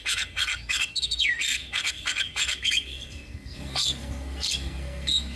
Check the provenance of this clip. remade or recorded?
remade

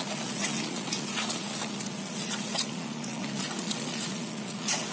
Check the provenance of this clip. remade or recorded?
remade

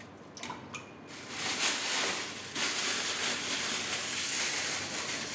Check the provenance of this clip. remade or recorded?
recorded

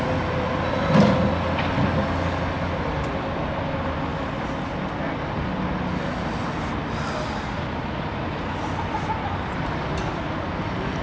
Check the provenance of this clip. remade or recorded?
recorded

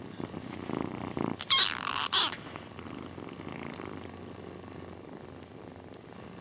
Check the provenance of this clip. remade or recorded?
recorded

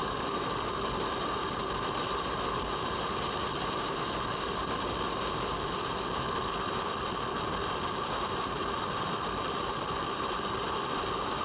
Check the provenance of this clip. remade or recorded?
recorded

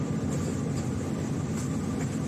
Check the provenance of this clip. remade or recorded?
remade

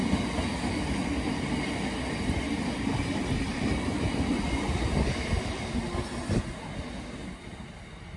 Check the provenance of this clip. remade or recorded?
recorded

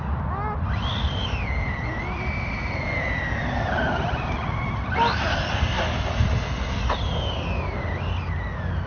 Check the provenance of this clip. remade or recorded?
recorded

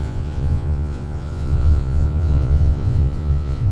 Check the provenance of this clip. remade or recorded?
remade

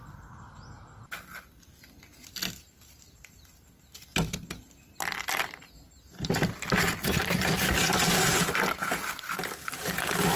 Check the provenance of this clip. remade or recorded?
recorded